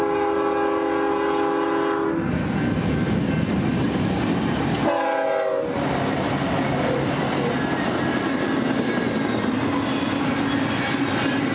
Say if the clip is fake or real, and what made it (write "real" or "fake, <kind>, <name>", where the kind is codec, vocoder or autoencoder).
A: real